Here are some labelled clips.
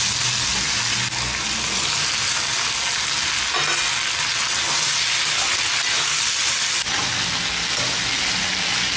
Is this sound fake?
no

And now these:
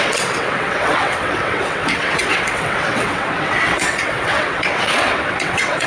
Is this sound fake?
yes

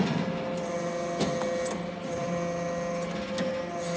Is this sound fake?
no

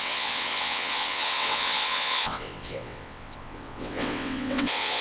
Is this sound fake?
yes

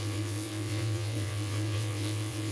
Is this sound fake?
yes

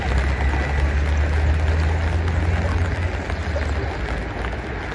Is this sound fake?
no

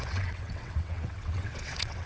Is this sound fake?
yes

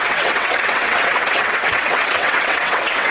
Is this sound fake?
yes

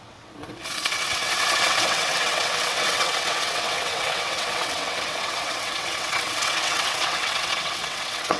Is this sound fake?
yes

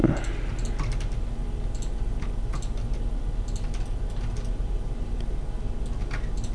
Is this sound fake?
no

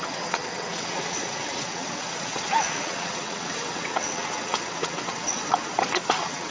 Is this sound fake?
yes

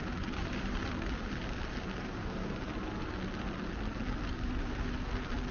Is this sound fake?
no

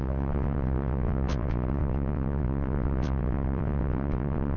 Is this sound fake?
yes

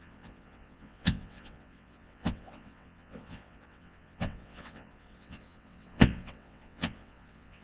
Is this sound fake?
yes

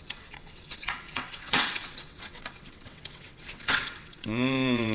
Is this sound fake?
yes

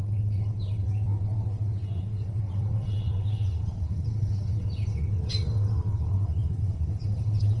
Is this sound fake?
yes